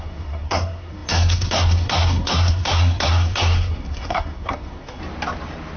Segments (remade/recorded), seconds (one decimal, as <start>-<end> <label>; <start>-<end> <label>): 0.0-5.0 remade; 5.0-5.8 recorded